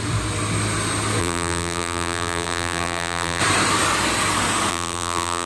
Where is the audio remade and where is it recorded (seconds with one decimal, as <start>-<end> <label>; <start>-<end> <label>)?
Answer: 0.0-1.2 recorded; 1.2-3.4 remade; 3.4-4.7 recorded; 4.7-5.5 remade